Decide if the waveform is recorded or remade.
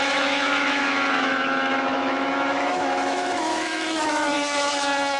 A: remade